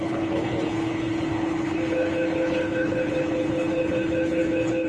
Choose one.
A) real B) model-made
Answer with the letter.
B